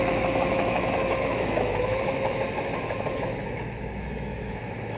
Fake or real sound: fake